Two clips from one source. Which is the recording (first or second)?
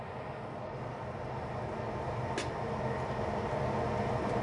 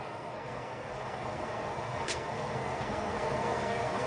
first